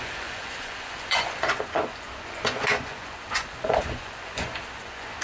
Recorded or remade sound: remade